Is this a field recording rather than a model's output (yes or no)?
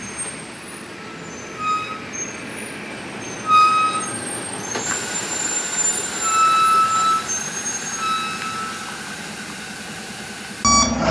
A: yes